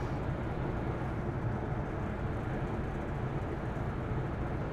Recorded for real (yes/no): no